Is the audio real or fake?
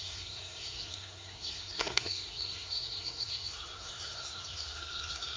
fake